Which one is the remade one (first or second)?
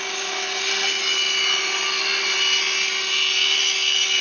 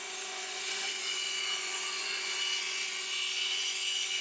second